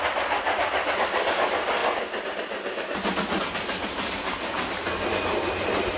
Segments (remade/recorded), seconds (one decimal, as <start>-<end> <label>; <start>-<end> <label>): 0.0-6.0 recorded